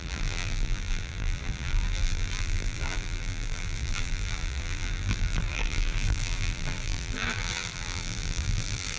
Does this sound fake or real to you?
fake